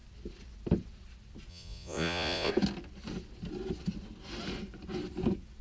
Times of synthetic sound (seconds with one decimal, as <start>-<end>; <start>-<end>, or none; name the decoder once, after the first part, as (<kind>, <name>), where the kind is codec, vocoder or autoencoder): 1.5-2.5 (vocoder, Vocos)